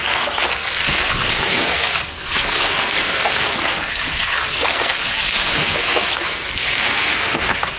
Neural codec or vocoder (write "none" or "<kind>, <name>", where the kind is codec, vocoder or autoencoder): codec, SNAC